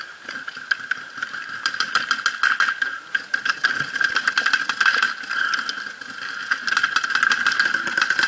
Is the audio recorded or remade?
recorded